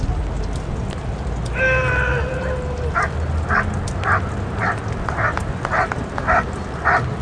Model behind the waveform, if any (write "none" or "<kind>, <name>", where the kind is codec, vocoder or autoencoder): none